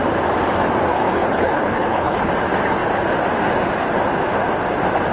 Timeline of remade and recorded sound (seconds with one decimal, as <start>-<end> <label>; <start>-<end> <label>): 0.0-0.9 recorded; 0.9-2.3 remade; 2.3-5.1 recorded